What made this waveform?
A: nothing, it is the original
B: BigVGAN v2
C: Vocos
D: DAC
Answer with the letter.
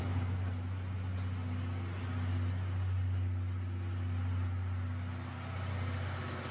A